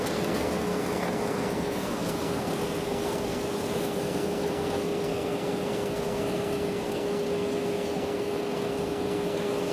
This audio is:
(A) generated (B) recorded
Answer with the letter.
A